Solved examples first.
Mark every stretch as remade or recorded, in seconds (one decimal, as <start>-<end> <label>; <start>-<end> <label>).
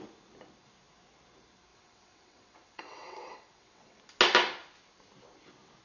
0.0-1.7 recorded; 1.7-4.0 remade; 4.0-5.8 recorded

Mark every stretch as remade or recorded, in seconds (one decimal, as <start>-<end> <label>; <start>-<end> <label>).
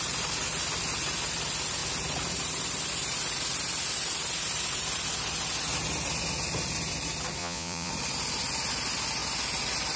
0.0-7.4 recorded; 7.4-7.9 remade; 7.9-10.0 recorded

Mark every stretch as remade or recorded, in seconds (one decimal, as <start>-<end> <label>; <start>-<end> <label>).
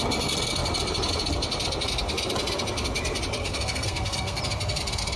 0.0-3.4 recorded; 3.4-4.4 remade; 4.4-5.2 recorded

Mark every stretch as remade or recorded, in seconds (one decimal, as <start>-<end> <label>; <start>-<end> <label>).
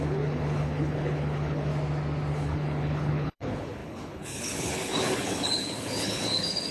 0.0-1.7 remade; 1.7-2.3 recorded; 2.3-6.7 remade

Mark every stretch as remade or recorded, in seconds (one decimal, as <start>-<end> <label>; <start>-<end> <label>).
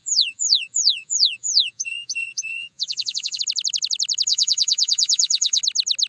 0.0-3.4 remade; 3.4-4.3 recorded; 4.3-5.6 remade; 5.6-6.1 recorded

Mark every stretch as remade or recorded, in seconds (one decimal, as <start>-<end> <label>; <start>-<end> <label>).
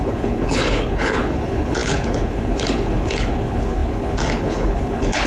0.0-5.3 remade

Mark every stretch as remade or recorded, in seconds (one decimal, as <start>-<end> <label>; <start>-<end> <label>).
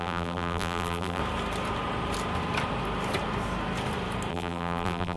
0.0-1.2 remade; 1.2-4.3 recorded; 4.3-5.2 remade